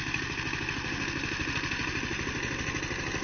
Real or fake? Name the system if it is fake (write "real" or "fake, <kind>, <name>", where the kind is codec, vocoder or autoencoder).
real